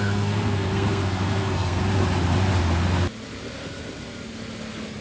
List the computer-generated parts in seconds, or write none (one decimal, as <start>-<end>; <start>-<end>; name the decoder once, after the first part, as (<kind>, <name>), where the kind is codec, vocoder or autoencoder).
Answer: 0.0-1.8 (codec, SNAC)